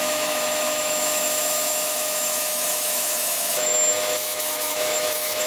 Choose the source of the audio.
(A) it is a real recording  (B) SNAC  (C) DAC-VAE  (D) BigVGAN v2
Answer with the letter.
C